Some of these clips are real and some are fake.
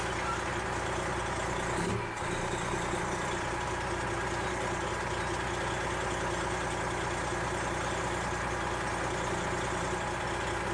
real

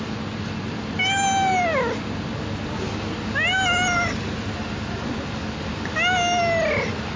real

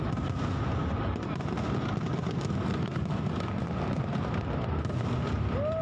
real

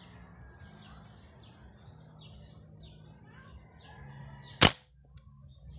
real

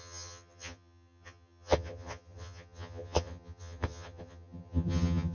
fake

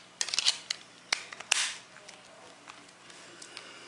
real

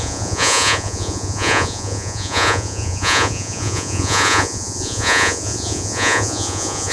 fake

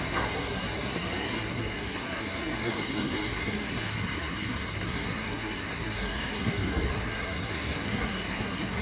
fake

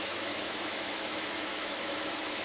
fake